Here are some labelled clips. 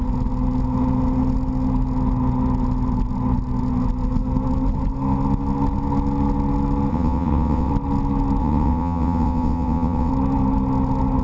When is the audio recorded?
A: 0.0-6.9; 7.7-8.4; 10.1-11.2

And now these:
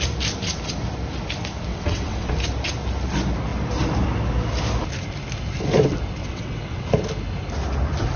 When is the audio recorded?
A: 0.0-1.7; 2.3-6.2; 6.9-8.2

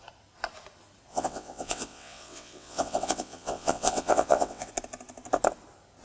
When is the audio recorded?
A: 0.0-1.1; 4.7-6.0

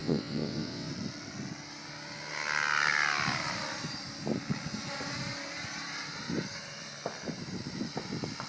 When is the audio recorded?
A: 0.9-8.5

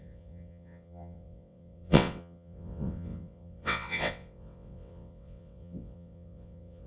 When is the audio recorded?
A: none

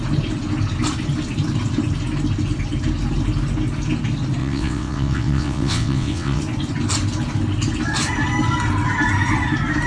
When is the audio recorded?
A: 0.0-4.4; 6.4-9.9